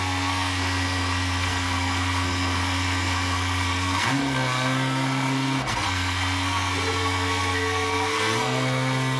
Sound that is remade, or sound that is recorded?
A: remade